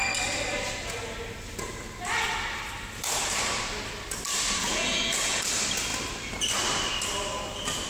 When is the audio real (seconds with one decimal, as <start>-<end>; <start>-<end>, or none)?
0.0-4.6; 5.4-7.9